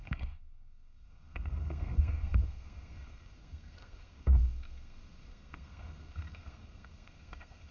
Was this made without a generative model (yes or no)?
no